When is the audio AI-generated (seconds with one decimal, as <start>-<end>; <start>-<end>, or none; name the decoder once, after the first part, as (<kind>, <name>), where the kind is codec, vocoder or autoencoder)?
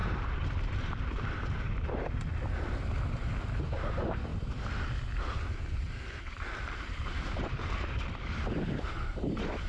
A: 0.0-2.3 (vocoder, BigVGAN v2); 3.6-4.3; 6.2-9.7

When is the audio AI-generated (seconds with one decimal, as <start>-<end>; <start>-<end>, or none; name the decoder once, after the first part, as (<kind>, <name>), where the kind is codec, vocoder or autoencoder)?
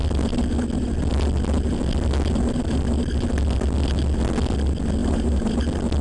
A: 5.0-5.6 (vocoder, BigVGAN v2)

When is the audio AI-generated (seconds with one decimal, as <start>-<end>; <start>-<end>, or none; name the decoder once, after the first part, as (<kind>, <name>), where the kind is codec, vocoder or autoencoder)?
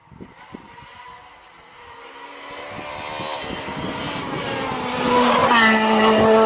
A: 3.5-5.4 (vocoder, BigVGAN v2)